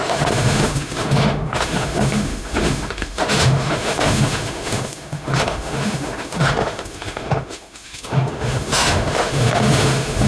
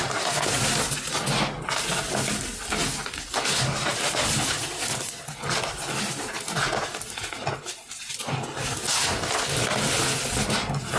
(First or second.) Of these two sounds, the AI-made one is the first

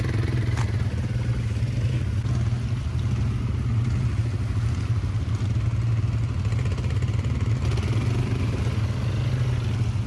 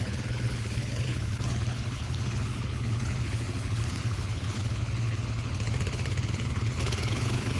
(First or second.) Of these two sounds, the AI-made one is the second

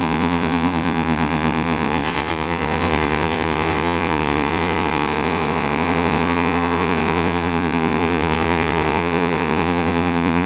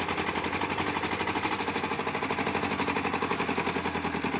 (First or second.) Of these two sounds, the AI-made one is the first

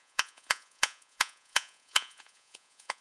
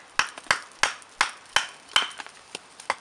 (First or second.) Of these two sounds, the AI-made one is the first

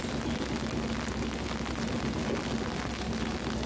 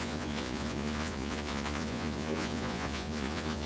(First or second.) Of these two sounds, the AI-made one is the second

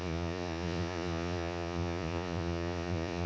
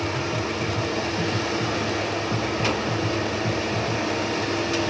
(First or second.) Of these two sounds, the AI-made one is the first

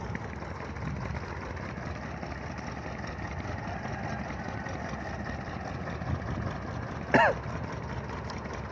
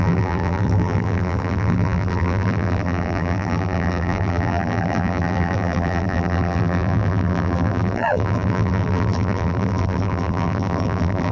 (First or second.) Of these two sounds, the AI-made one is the second